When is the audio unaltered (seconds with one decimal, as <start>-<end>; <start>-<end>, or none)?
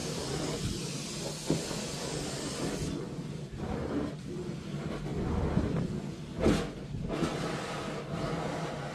0.0-8.9